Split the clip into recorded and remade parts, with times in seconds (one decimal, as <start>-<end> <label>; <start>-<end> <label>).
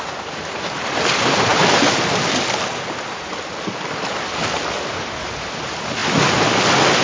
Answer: 0.0-7.0 recorded